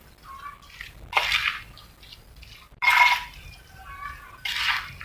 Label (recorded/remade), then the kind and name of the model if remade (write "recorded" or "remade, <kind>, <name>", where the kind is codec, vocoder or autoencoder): recorded